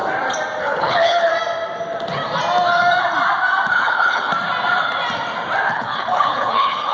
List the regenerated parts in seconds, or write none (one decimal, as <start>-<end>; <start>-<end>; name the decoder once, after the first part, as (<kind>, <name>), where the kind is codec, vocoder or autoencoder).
0.6-1.3 (codec, HILCodec); 3.7-4.3; 5.7-6.9